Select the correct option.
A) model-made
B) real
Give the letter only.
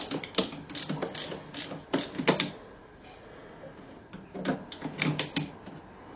B